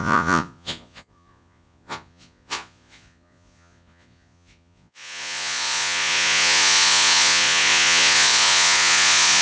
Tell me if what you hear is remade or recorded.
remade